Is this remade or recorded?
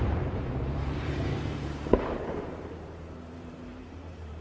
remade